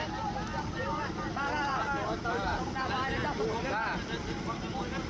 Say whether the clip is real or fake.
real